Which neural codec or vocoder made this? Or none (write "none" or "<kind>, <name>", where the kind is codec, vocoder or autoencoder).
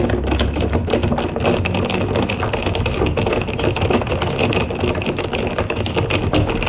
none